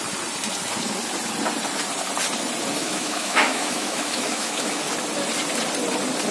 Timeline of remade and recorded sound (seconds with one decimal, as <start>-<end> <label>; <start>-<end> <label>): 0.0-2.8 recorded; 2.8-4.8 remade; 4.8-6.3 recorded